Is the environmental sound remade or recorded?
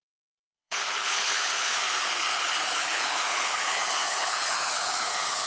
remade